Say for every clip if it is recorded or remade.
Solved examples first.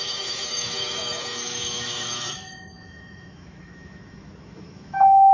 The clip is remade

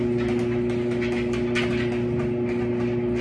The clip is recorded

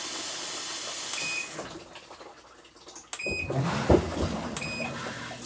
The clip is recorded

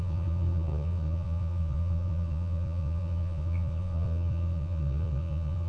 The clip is remade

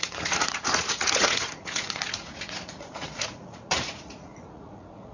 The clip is remade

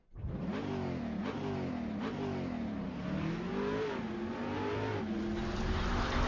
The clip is recorded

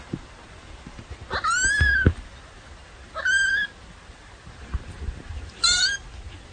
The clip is recorded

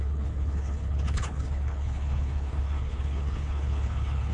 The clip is remade